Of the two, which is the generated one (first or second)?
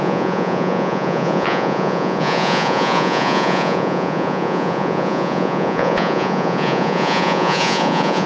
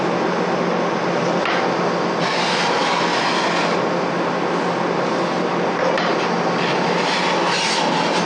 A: first